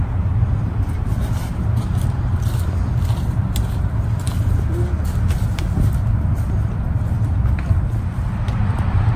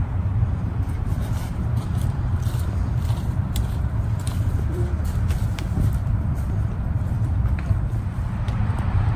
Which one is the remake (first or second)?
second